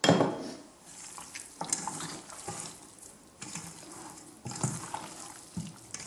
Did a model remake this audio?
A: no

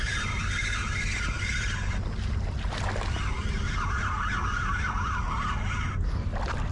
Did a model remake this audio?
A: no